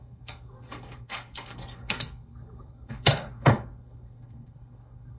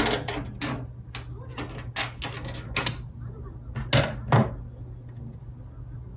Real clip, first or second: second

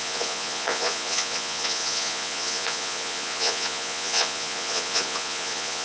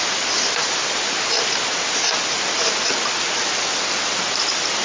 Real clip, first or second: second